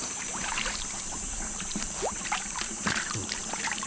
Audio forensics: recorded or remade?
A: remade